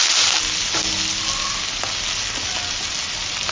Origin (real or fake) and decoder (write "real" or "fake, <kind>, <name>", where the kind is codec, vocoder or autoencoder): real